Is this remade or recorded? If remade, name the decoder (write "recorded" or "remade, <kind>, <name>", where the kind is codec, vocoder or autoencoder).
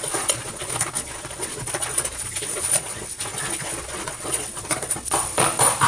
remade, vocoder, Vocos